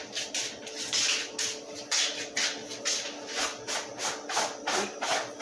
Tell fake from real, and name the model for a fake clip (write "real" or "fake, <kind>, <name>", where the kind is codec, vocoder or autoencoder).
real